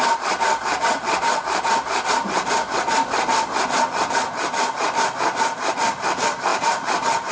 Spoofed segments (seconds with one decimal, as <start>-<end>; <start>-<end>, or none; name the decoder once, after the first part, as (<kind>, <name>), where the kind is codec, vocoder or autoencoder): 6.5-7.3 (vocoder, BigVGAN v2)